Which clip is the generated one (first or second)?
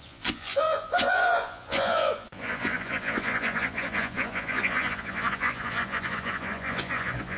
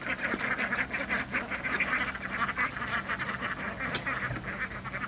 first